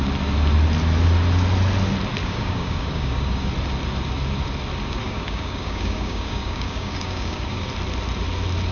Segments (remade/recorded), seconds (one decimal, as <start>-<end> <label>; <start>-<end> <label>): 0.0-2.2 recorded; 2.2-3.5 remade; 3.5-5.0 recorded; 5.0-7.7 remade; 7.7-8.7 recorded